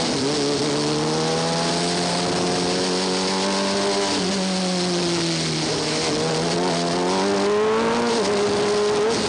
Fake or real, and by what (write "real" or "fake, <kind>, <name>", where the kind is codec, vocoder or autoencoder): real